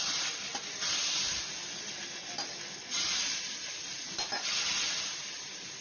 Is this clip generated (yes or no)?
no